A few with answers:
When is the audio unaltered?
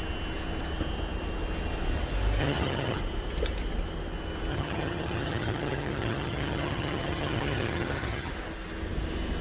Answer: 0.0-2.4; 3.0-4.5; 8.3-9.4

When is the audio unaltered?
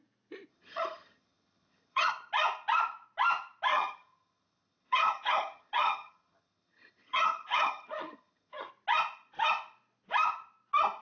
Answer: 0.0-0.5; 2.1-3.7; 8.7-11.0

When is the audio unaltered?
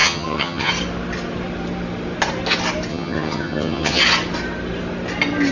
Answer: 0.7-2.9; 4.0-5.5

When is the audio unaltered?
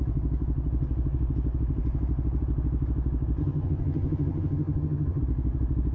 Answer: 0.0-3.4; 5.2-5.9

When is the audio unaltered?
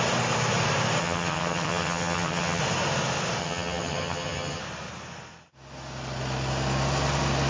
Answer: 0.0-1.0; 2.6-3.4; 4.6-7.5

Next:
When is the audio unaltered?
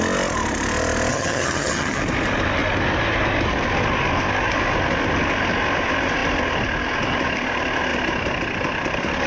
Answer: 0.0-1.1; 2.0-9.3